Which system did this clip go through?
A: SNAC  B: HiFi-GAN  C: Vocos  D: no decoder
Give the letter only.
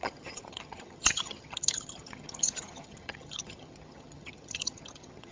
B